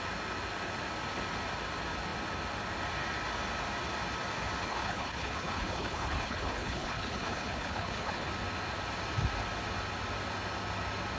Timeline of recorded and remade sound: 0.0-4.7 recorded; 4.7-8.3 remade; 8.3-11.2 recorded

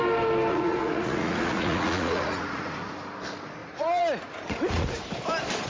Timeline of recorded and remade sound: 0.0-0.5 recorded; 0.5-2.9 remade; 2.9-3.6 recorded; 3.6-5.0 remade; 5.0-5.7 recorded

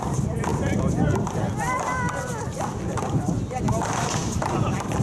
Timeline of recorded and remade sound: 0.0-5.0 recorded

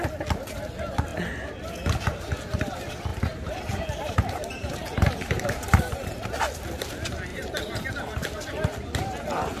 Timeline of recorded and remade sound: 0.0-3.1 recorded; 3.1-6.1 remade; 6.1-7.3 recorded; 7.3-7.9 remade; 7.9-9.6 recorded